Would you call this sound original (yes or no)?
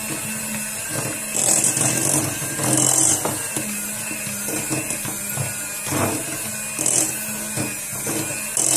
yes